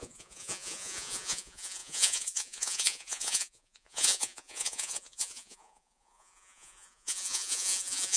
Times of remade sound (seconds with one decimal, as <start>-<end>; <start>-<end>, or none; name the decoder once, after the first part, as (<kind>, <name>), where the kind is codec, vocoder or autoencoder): 0.0-8.2 (vocoder, Vocos)